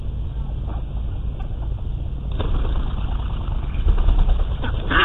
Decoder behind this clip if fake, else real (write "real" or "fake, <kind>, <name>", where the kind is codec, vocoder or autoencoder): real